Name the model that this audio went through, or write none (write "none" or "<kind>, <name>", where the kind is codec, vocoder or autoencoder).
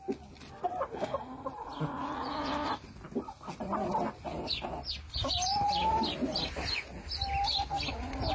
none